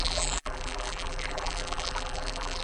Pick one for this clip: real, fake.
fake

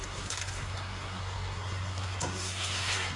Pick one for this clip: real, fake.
fake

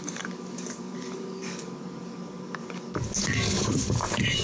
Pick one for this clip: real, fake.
fake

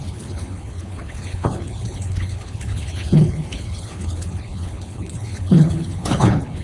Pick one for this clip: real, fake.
fake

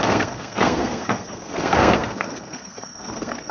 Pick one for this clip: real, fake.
fake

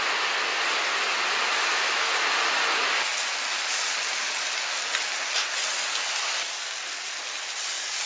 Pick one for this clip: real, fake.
real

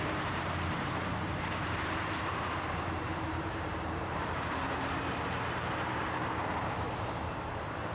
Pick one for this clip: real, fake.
fake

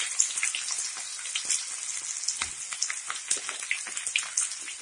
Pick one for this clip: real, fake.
real